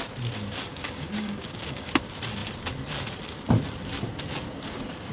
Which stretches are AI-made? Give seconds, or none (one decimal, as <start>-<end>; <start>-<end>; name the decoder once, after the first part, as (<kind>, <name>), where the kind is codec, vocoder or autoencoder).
0.7-1.9 (codec, DAC)